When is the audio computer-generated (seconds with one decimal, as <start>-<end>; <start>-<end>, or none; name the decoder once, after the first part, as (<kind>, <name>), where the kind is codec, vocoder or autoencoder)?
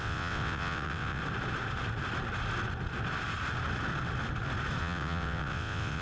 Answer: 0.0-1.2 (vocoder, WaveNeXt); 4.8-6.0